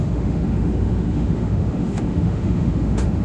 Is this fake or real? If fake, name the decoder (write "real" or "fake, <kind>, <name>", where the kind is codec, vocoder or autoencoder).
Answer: fake, autoencoder, DAC-VAE